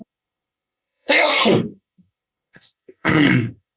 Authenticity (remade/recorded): remade